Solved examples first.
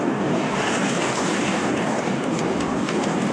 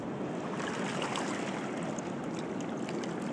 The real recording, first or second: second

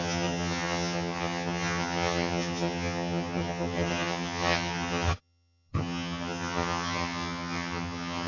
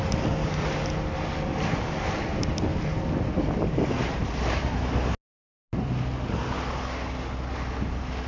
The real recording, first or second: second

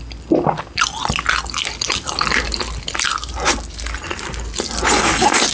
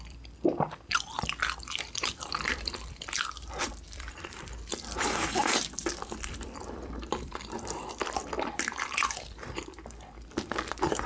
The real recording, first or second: first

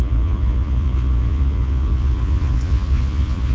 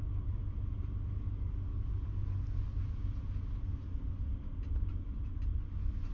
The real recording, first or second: second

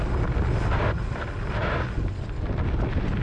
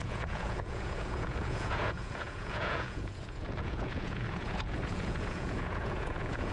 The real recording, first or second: first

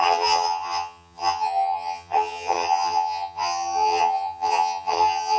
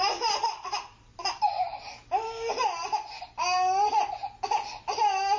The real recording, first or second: second